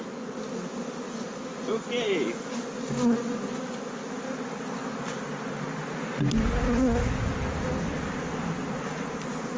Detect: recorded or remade recorded